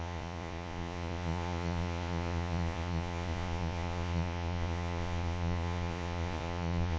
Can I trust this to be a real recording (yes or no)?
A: no